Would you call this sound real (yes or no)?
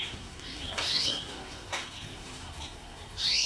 no